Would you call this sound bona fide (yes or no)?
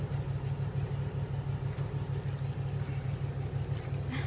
yes